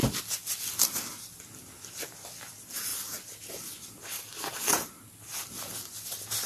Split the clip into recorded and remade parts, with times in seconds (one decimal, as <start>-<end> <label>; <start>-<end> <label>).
0.0-6.5 recorded